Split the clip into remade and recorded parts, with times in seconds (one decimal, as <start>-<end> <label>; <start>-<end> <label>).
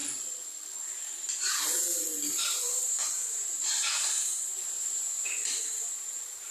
0.0-0.8 recorded; 0.8-1.8 remade; 1.8-2.3 recorded; 2.3-6.5 remade